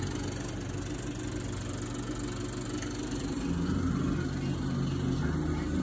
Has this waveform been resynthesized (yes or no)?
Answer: no